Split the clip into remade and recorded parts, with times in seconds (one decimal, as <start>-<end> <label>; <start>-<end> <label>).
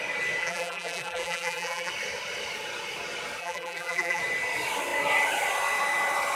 0.0-0.4 recorded; 0.4-1.9 remade; 1.9-3.4 recorded; 3.4-4.2 remade; 4.2-6.4 recorded